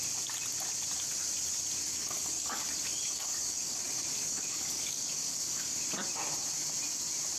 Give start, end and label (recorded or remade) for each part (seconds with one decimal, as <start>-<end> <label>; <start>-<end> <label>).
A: 0.0-1.9 recorded; 1.9-5.8 remade; 5.8-7.4 recorded